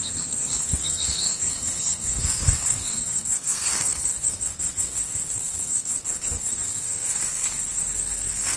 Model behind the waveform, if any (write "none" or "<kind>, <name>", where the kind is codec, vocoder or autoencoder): codec, SNAC